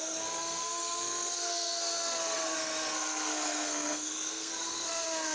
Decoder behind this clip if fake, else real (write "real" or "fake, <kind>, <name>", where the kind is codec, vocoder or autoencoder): fake, codec, SNAC